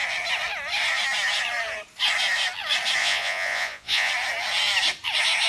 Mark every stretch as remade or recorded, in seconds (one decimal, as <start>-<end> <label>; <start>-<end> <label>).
0.0-3.0 recorded; 3.0-4.1 remade; 4.1-5.5 recorded